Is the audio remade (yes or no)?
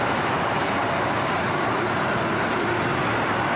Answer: no